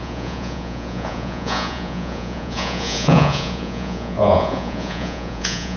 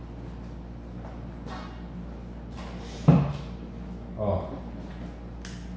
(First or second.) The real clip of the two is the second